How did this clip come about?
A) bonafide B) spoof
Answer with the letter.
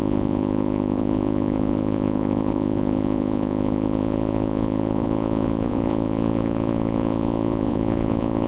B